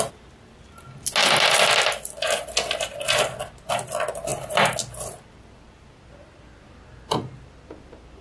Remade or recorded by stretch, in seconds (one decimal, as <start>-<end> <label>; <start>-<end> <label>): 0.0-8.2 recorded